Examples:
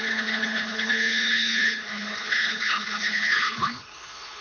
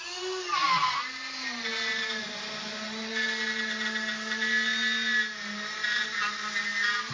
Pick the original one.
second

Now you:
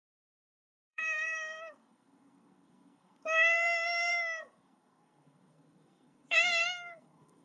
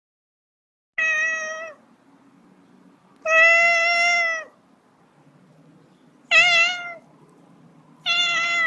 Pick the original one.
second